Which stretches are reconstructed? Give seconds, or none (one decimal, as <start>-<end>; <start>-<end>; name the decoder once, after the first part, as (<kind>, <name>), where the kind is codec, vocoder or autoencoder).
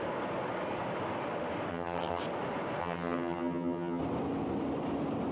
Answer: 1.7-2.2 (vocoder, HiFi-GAN); 2.8-4.0